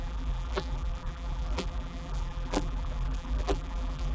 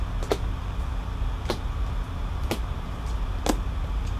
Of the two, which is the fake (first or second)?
first